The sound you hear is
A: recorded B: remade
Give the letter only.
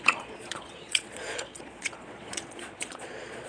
B